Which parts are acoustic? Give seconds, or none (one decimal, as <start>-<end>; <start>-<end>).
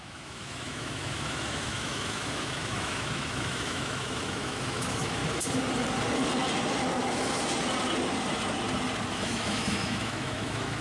5.2-9.1